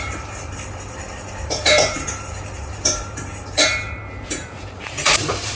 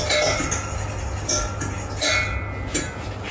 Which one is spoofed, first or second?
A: first